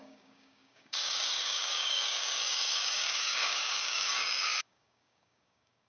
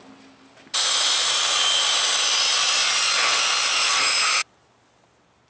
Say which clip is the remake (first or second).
first